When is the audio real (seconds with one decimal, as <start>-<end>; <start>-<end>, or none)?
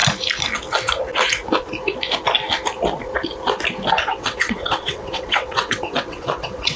0.0-3.9